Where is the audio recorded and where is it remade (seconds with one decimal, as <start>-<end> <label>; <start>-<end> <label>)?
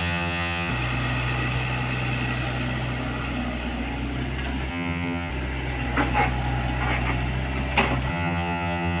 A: 0.0-0.7 remade; 0.7-4.7 recorded; 4.7-5.3 remade; 5.3-8.1 recorded; 8.1-9.0 remade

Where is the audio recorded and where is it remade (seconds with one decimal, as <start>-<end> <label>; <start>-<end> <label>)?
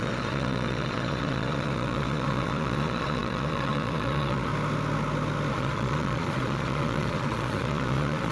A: 0.0-4.5 remade; 4.5-5.5 recorded; 5.5-8.3 remade